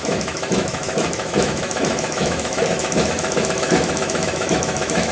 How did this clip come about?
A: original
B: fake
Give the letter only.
B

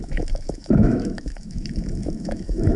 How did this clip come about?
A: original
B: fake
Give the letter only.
B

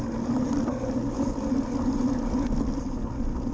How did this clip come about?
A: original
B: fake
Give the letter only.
A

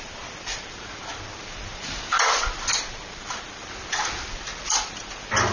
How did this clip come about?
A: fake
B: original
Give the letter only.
B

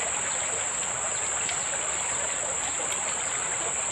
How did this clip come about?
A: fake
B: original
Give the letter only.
B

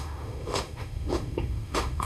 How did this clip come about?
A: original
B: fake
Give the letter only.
B